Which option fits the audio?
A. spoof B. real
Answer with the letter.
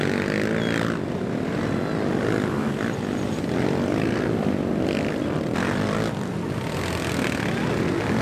B